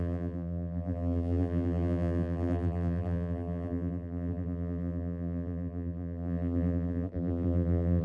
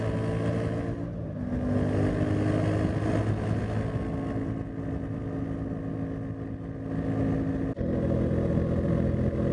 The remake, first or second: first